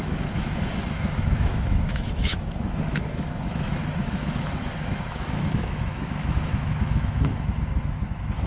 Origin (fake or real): fake